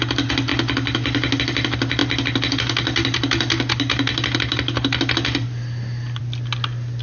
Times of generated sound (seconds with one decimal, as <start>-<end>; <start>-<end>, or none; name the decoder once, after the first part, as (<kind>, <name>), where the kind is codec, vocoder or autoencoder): none